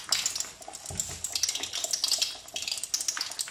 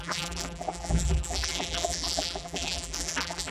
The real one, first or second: first